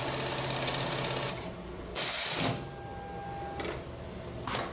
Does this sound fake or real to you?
real